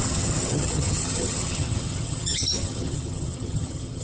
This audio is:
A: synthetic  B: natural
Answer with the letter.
A